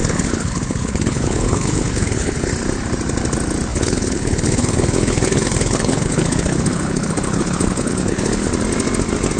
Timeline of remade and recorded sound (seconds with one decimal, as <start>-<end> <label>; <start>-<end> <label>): 0.0-2.5 remade; 2.5-3.7 recorded; 3.7-8.5 remade; 8.5-9.4 recorded